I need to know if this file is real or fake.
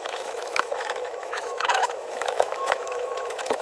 fake